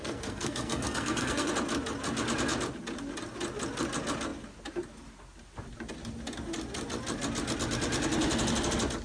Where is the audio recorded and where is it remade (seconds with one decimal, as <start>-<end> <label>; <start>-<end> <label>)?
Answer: 0.0-1.5 remade; 1.5-9.0 recorded